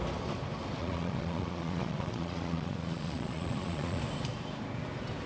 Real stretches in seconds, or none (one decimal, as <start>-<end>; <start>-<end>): 0.0-0.8; 4.0-5.3